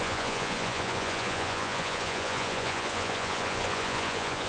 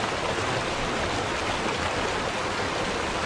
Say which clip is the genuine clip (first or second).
second